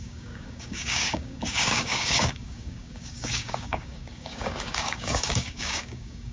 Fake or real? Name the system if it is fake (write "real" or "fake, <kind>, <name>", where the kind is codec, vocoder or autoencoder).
fake, codec, DAC